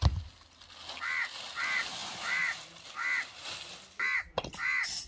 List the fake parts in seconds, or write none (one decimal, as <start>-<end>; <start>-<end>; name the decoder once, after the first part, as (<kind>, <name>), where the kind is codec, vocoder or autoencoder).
none